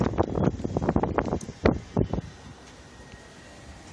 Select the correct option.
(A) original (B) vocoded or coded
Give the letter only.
A